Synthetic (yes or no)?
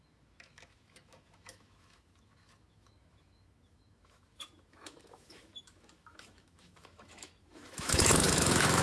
yes